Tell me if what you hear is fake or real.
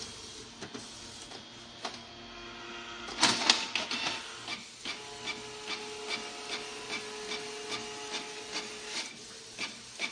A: real